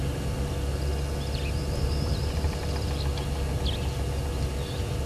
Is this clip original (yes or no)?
yes